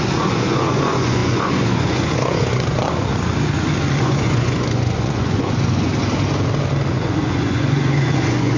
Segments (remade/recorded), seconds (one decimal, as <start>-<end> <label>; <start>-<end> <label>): 0.0-3.1 remade; 3.1-4.0 recorded; 4.0-5.9 remade; 5.9-6.9 recorded; 6.9-8.6 remade